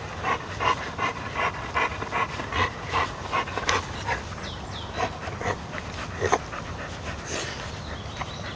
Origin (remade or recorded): recorded